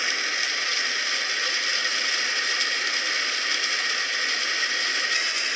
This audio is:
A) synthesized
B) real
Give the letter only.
B